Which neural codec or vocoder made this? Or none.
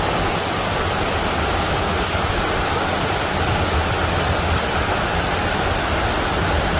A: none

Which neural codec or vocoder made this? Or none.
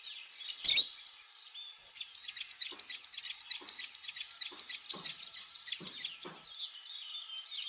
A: none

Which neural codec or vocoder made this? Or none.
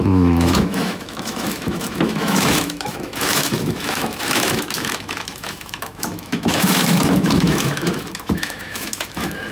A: autoencoder, DAC-VAE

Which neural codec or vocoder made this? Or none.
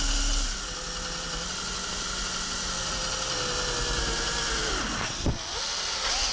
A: none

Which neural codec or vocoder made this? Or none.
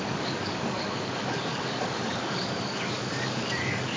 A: codec, DAC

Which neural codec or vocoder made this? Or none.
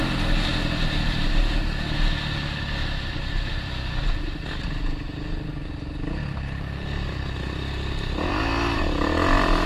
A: none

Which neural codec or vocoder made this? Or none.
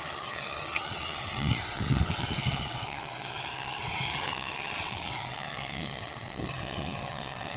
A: vocoder, WaveNeXt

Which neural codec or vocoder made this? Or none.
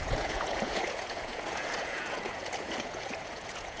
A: vocoder, Vocos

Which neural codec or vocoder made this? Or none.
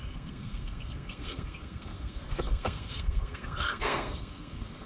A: codec, SNAC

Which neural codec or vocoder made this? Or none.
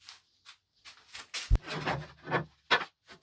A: none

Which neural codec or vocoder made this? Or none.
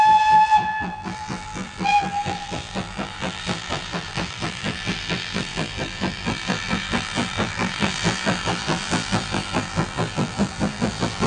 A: vocoder, BigVGAN v2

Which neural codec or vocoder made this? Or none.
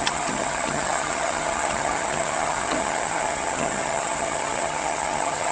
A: vocoder, HiFi-GAN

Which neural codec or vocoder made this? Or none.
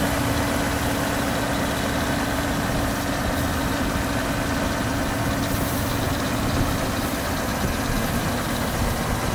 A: none